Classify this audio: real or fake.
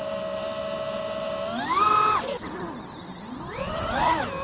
real